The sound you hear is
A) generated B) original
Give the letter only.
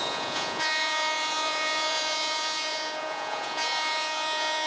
A